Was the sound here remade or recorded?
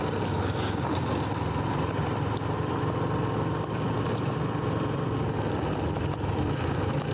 recorded